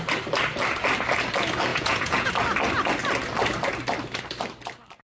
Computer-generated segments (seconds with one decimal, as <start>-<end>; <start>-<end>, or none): 1.7-2.3